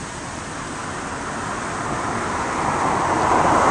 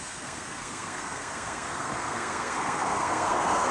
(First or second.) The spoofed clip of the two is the second